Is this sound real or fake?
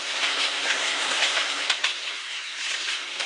fake